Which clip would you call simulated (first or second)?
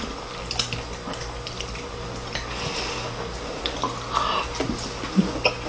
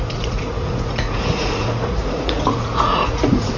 second